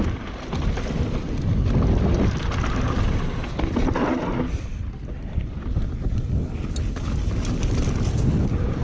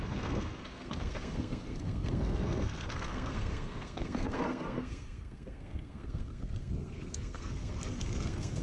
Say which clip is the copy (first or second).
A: second